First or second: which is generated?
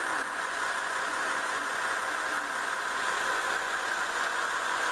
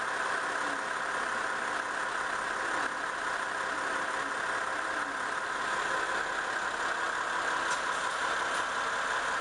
first